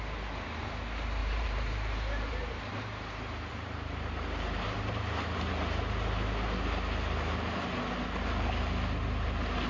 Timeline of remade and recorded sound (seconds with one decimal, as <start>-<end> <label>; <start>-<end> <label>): 0.0-1.2 recorded; 1.2-5.5 remade; 5.5-9.7 recorded